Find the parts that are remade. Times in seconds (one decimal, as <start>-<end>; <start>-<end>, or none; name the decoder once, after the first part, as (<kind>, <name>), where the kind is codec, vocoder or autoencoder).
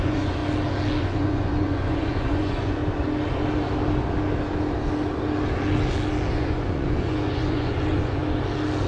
0.0-0.4 (vocoder, Vocos); 1.0-2.8; 6.3-8.2